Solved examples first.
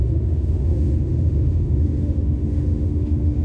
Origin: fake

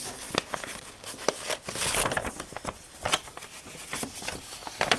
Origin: real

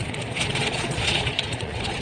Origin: fake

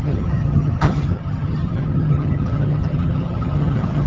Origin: fake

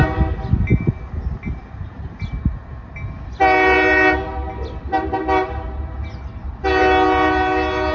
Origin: real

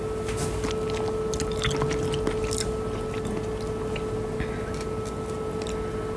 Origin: real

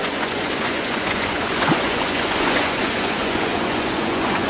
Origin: fake